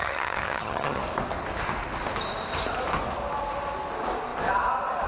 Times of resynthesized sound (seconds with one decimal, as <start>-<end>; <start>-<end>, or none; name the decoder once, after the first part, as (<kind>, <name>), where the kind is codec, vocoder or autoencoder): 0.0-1.0 (vocoder, HiFi-GAN)